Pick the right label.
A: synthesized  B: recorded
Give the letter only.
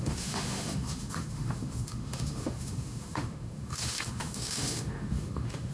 A